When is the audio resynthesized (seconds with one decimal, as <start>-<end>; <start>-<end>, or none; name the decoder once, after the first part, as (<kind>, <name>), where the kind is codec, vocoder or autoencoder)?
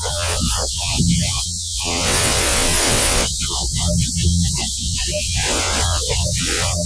0.0-6.9 (vocoder, WaveNeXt)